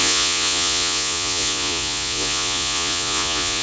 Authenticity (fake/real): fake